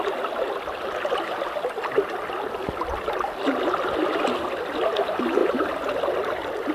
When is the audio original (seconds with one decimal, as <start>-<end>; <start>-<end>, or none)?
0.0-6.7